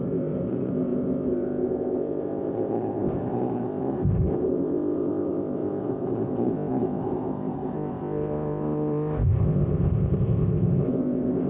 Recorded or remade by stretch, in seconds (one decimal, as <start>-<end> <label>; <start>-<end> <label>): 0.0-11.5 remade

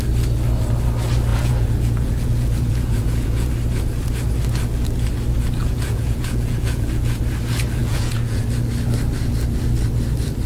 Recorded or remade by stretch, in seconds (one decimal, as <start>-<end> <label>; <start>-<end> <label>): 0.0-1.3 recorded; 1.3-3.5 remade; 3.5-5.6 recorded; 5.6-7.2 remade; 7.2-7.8 recorded; 7.8-8.4 remade; 8.4-10.5 recorded

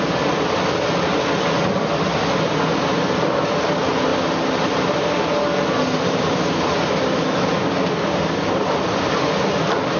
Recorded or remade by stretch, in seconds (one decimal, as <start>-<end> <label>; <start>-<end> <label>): 0.0-10.0 recorded

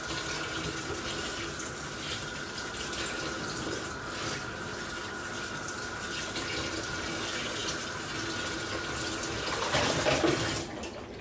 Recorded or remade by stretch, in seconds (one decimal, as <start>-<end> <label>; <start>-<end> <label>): 0.0-11.2 recorded

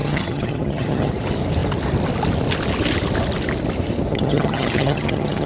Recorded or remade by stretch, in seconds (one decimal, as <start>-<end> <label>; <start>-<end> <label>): 0.0-1.1 remade; 1.1-4.1 recorded; 4.1-5.5 remade